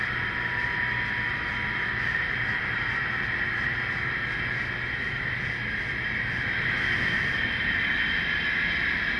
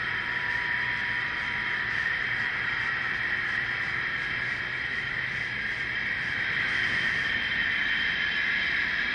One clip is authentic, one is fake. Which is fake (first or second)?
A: second